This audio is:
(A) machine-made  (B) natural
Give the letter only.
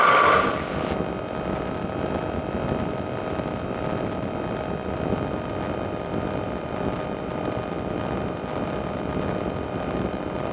B